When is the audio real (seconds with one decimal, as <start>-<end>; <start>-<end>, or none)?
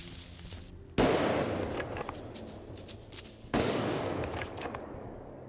0.0-3.3